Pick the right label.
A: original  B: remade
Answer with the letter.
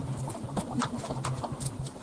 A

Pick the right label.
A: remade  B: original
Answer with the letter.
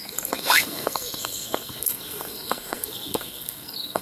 A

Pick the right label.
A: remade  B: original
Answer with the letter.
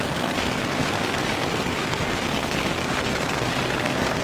A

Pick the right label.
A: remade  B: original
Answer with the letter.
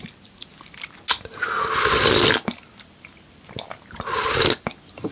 B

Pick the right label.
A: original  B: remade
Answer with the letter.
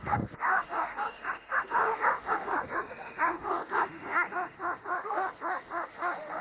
B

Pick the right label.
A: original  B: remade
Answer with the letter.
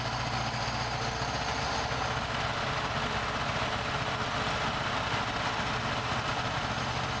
A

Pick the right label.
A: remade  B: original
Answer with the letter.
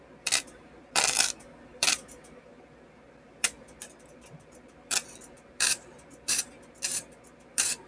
A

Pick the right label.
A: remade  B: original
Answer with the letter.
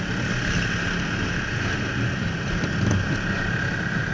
B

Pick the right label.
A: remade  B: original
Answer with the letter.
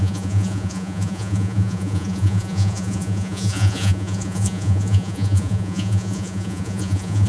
A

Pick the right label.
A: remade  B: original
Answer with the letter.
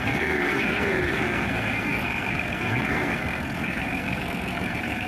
A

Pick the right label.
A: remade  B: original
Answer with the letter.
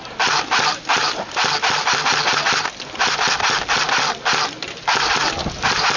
B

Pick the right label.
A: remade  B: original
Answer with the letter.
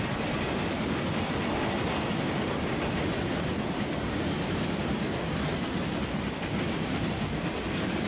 B